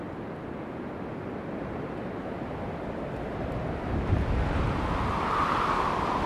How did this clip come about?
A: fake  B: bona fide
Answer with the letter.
B